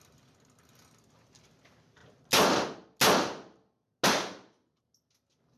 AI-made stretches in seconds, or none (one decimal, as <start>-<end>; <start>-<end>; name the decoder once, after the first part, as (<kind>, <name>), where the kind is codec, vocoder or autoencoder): none

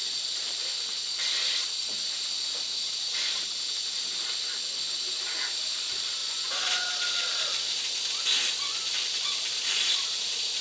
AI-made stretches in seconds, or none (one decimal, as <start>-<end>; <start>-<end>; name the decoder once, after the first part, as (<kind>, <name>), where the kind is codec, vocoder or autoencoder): 6.2-6.9 (vocoder, Vocos)